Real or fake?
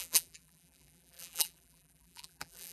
fake